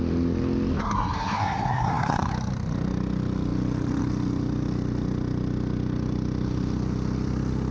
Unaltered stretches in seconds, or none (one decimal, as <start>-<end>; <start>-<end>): 0.0-0.8; 2.3-7.7